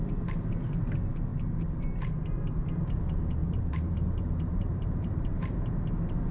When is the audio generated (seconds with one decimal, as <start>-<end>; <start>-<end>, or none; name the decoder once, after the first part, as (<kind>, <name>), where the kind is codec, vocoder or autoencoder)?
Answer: 3.4-5.3 (vocoder, BigVGAN v2)